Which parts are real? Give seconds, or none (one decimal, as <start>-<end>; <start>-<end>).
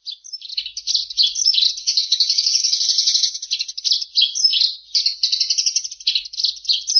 0.0-1.8; 3.4-7.0